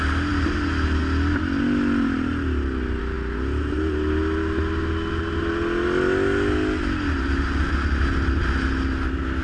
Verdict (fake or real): real